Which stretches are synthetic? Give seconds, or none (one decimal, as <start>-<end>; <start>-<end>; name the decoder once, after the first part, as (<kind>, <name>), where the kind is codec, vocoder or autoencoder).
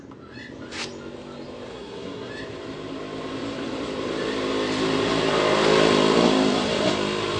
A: 1.7-2.3 (codec, SNAC)